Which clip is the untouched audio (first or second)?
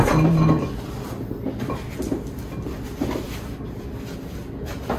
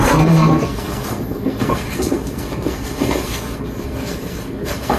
first